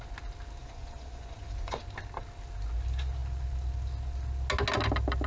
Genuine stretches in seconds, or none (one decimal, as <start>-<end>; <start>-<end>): 0.0-0.6; 1.8-5.3